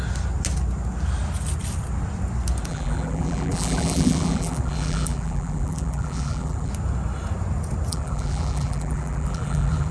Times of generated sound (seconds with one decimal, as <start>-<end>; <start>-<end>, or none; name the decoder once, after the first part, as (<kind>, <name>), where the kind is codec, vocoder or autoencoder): 2.7-6.7 (vocoder, BigVGAN v2); 7.9-9.9